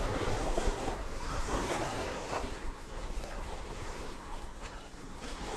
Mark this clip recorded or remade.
remade